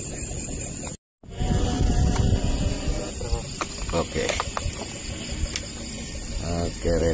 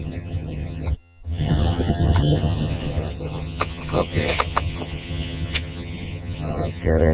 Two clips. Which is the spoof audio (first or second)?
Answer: second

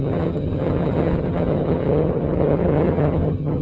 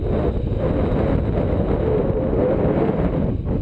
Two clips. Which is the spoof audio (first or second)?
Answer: first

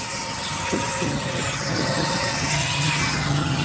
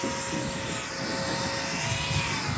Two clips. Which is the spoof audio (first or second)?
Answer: first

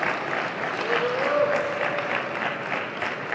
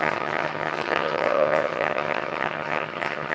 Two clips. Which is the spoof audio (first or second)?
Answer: second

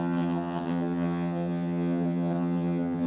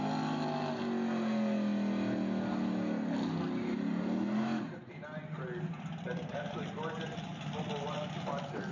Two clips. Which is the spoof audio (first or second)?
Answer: first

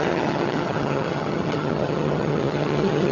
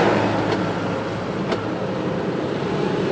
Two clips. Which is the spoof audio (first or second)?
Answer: first